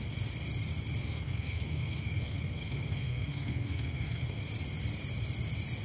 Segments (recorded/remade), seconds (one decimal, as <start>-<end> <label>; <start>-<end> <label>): 0.0-1.0 recorded; 1.0-4.4 remade; 4.4-5.8 recorded